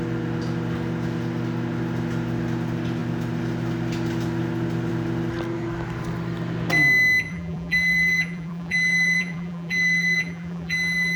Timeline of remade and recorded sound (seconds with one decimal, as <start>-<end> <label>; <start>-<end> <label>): 0.0-7.3 recorded; 7.3-11.2 remade